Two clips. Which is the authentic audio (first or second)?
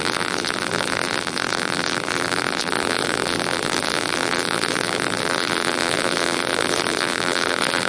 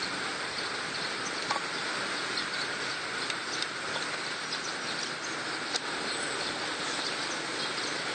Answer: second